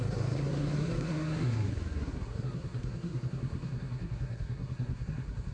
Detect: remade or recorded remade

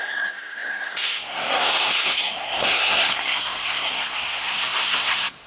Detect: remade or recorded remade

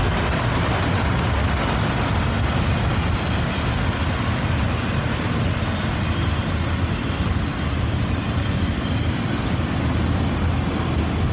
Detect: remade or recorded recorded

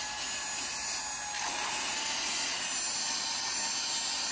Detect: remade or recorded recorded